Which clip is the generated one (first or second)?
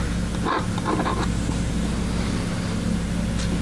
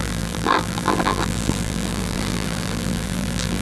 second